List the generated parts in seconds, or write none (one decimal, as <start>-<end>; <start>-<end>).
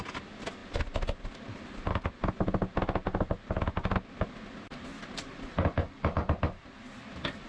none